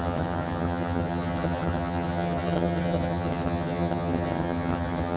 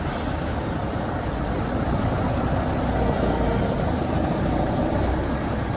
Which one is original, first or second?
second